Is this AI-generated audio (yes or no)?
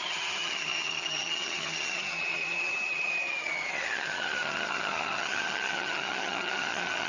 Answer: yes